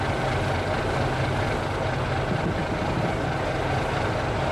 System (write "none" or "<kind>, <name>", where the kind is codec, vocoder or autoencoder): none